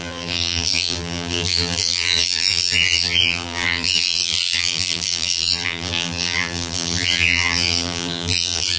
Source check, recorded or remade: remade